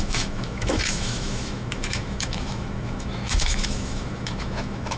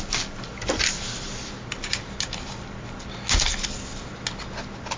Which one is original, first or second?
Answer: second